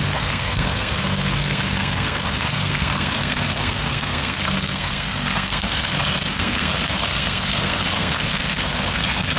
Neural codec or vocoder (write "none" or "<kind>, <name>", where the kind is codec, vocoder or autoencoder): codec, SNAC